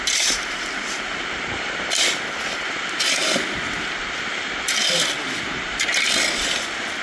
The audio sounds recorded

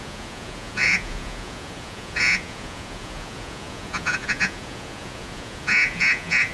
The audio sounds remade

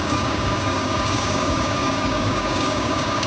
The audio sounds remade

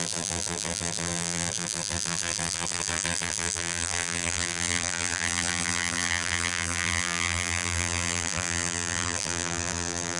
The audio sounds remade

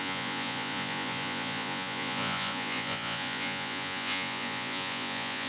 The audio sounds remade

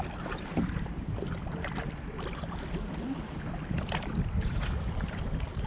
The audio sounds recorded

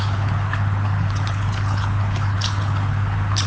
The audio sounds remade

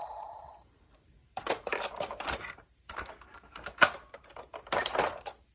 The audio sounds remade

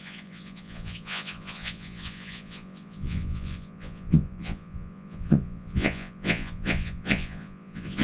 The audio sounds remade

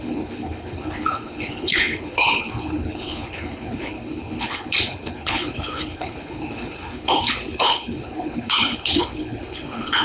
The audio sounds remade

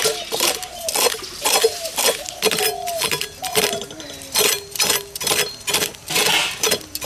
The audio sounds recorded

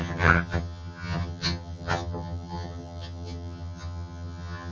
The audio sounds remade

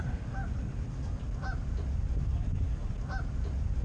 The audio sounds recorded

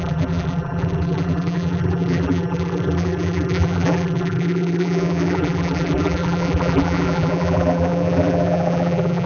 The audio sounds remade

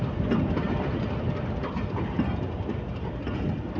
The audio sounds remade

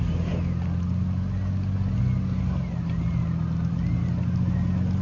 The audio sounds recorded